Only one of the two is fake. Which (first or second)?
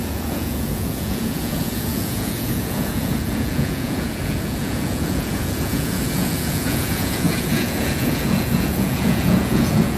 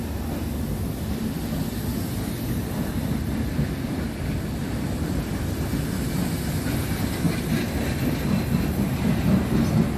first